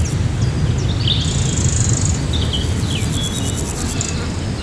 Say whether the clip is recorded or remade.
recorded